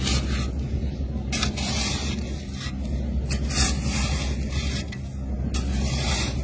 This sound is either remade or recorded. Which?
recorded